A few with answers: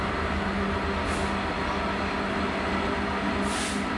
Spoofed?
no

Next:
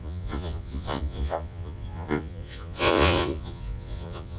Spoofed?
yes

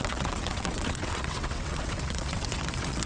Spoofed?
yes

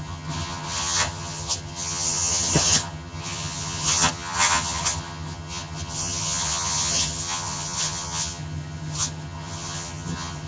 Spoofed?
yes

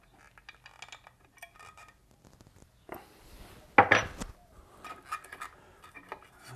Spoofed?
no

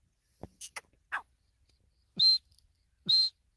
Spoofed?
no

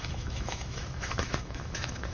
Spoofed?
yes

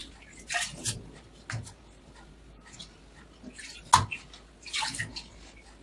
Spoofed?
no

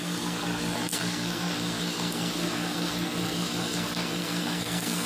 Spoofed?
yes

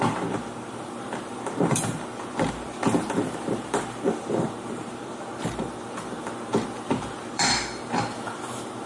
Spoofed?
yes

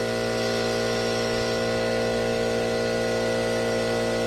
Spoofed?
no